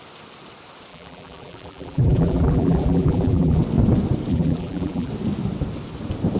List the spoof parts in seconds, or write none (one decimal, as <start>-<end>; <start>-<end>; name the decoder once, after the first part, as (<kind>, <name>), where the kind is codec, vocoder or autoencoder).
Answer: 0.9-3.6 (vocoder, BigVGAN v2); 4.3-5.1